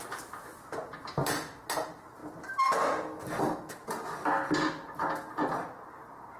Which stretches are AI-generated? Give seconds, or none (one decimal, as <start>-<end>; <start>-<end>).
none